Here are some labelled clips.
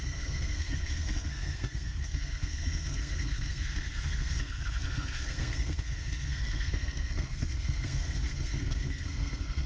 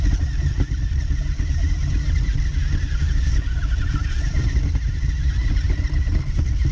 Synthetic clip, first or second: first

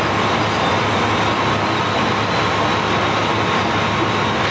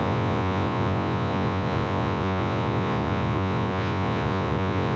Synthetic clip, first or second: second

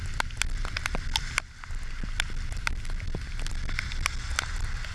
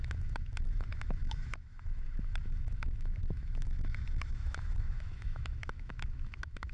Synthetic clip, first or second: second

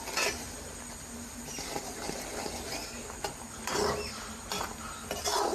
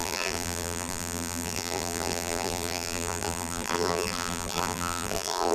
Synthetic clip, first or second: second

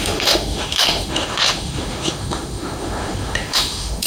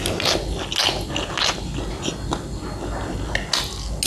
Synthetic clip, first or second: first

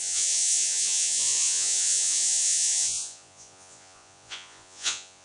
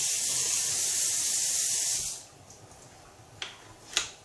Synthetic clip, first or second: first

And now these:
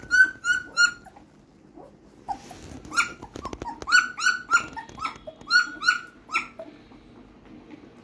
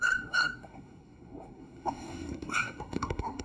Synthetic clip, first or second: second